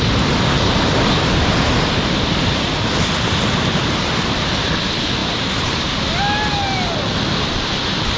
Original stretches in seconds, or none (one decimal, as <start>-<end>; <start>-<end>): 0.0-5.2; 6.1-8.2